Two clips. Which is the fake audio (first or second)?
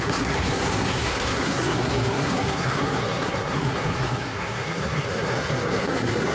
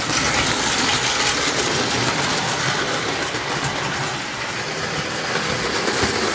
first